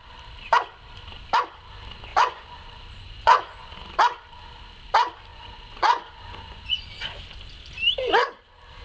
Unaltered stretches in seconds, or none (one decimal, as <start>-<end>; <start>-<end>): 0.0-2.1; 3.7-5.3; 6.9-8.8